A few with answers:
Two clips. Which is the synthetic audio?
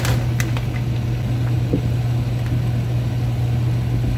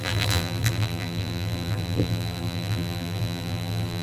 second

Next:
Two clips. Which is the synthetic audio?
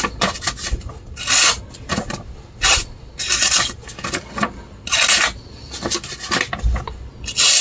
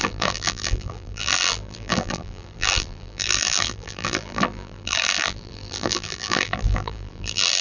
second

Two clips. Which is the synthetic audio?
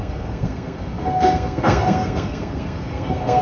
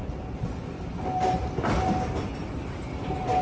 first